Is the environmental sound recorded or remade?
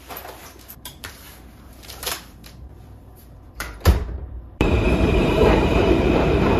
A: remade